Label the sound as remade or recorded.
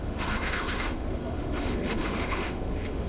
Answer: remade